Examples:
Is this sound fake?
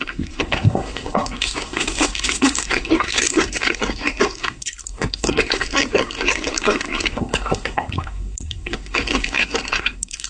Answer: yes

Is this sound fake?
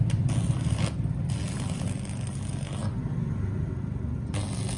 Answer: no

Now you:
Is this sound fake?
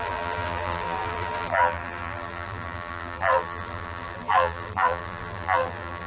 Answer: yes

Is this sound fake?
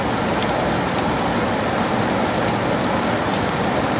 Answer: no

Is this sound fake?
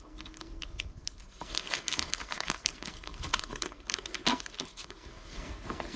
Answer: yes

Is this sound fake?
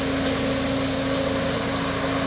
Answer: no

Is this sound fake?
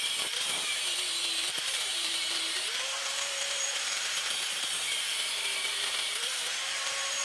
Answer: yes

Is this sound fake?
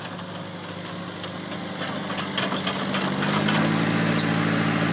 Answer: no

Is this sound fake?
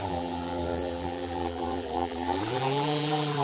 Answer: yes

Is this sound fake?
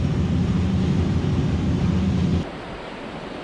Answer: no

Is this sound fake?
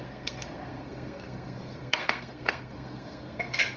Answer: yes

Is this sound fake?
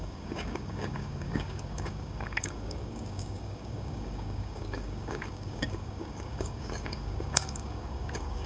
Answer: yes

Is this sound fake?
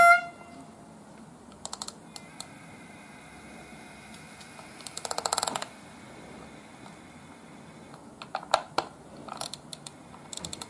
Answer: no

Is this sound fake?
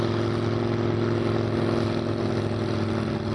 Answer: no